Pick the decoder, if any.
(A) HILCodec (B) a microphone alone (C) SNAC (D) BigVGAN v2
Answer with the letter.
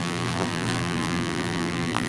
D